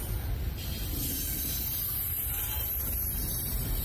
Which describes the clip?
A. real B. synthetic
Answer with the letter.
A